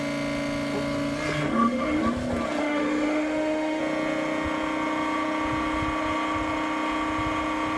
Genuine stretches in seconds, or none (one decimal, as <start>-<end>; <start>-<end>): 0.0-1.5; 2.0-2.6; 3.8-7.8